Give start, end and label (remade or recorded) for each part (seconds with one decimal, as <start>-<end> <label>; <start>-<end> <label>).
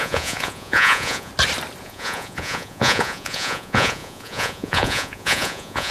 0.0-1.3 remade; 1.3-1.8 recorded; 1.8-5.9 remade